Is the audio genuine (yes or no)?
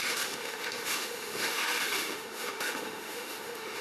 no